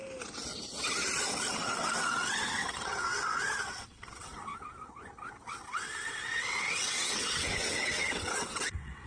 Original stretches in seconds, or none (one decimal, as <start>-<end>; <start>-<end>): 0.0-1.5; 4.5-5.7